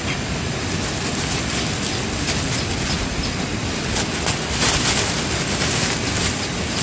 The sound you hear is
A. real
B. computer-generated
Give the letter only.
A